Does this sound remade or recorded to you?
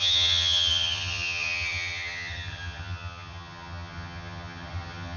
remade